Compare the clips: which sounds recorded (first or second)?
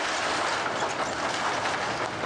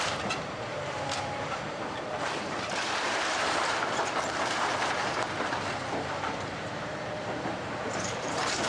first